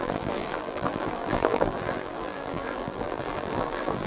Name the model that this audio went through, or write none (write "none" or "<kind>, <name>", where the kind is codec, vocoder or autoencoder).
vocoder, BigVGAN v2